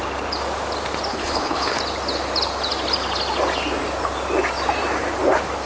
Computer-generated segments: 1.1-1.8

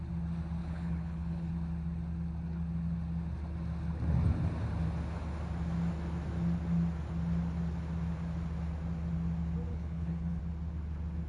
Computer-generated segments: 0.6-1.5; 9.7-10.4

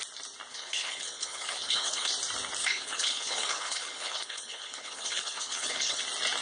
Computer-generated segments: 0.5-2.1; 2.6-6.0

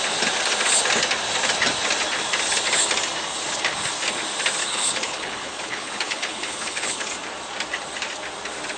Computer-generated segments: 4.6-7.1

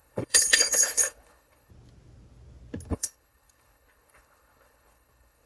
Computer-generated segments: 0.0-1.7; 2.9-5.5

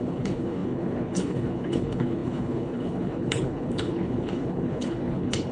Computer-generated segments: 0.0-5.5